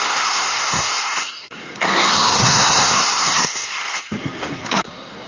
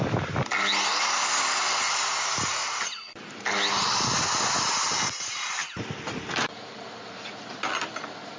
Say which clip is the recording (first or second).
second